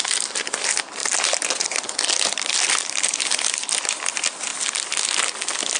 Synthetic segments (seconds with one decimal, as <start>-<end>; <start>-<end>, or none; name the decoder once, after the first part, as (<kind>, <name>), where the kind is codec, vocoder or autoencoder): none